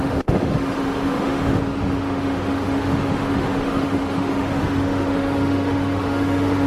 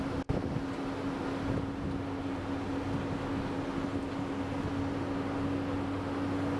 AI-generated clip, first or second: first